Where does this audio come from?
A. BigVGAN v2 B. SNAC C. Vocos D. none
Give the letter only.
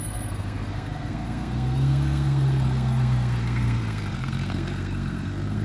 B